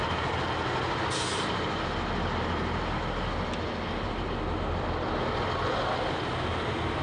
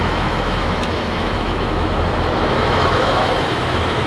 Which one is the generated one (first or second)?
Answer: second